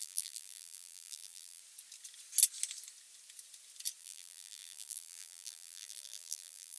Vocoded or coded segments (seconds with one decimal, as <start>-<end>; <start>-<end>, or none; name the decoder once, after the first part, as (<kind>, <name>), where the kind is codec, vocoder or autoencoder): 0.0-1.6 (vocoder, BigVGAN v2); 4.0-6.8